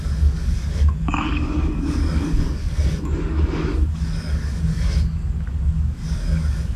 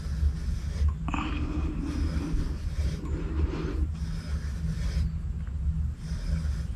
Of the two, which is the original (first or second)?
second